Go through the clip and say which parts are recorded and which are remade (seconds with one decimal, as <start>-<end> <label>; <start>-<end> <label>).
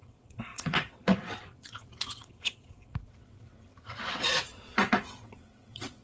0.0-6.0 remade